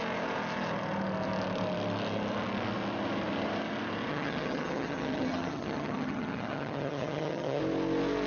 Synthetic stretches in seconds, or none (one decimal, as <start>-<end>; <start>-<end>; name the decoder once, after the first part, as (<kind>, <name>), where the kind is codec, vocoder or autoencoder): 4.1-7.6 (vocoder, HiFi-GAN)